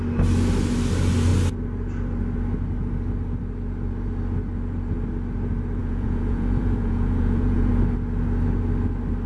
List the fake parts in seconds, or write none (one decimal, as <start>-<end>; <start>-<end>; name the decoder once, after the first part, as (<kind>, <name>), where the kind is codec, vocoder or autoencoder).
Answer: 5.8-7.7 (vocoder, Vocos)